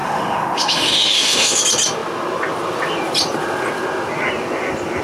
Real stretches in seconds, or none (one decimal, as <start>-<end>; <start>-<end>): 1.6-5.0